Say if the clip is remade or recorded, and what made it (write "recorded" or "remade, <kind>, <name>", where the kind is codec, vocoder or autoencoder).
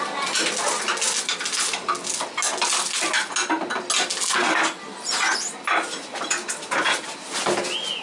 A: recorded